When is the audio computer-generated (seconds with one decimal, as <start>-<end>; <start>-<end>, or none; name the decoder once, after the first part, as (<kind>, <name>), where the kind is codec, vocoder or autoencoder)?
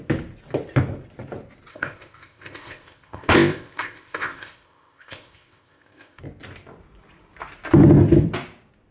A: 1.7-6.2 (codec, ZipCodec)